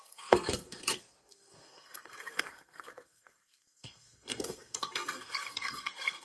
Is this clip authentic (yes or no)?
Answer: no